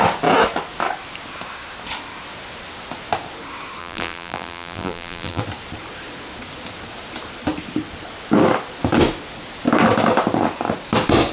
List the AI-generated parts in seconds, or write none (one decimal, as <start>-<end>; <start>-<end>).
3.8-5.4